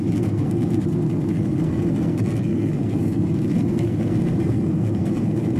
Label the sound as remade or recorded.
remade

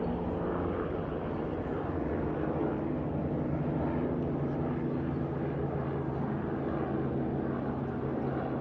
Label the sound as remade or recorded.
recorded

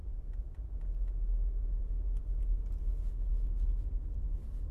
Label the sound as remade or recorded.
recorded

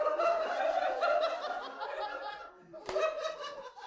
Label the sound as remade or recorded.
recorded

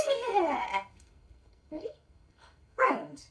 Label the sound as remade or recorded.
remade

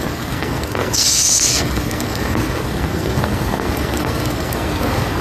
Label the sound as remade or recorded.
remade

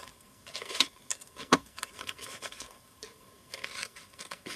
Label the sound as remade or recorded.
remade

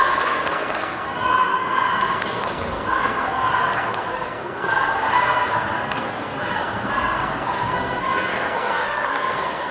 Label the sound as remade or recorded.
remade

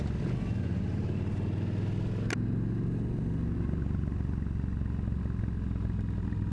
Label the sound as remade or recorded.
recorded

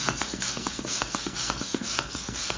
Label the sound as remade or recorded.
remade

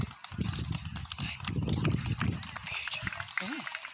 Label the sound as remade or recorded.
recorded